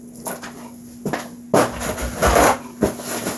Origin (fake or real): real